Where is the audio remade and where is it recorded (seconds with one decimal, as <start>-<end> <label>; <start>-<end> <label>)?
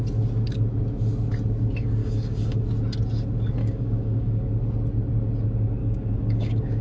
0.0-2.0 recorded; 2.0-2.6 remade; 2.6-3.6 recorded; 3.6-4.4 remade; 4.4-5.8 recorded; 5.8-6.8 remade